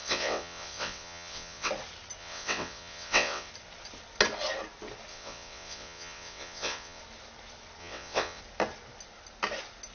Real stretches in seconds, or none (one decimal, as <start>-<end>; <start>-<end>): 1.7-2.2; 3.5-5.1; 7.0-7.8; 8.4-9.9